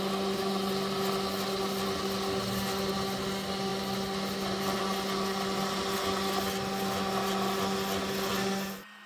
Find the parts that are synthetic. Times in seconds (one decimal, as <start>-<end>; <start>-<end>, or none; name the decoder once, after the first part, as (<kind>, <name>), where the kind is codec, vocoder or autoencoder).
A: none